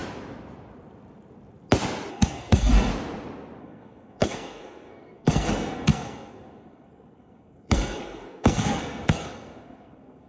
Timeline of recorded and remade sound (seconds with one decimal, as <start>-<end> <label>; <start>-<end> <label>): 0.0-2.1 recorded; 2.1-2.9 remade; 2.9-3.6 recorded; 3.6-10.3 remade